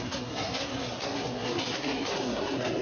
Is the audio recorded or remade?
remade